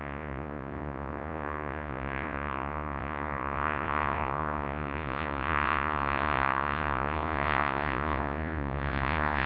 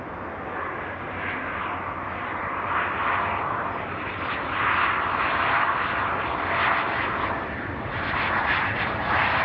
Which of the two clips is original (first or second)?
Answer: second